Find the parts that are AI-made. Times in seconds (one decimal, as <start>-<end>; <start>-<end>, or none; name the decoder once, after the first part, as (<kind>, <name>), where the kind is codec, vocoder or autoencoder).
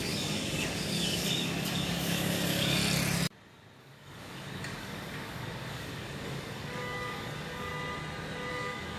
0.0-2.8 (codec, DAC); 3.8-7.7; 8.5-9.0